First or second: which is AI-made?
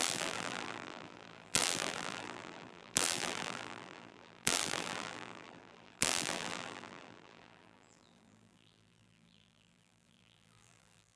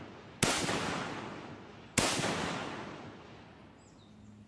first